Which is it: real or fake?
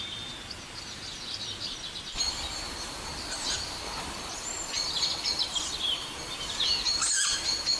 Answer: real